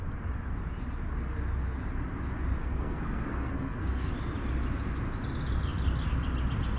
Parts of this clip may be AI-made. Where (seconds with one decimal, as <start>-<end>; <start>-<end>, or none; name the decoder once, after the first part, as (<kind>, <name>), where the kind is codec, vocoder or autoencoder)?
2.6-4.1 (codec, SNAC)